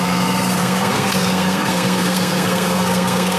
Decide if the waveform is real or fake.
fake